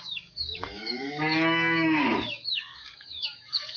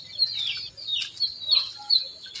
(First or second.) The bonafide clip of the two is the second